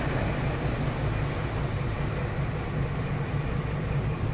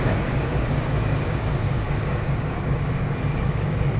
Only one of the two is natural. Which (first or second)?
first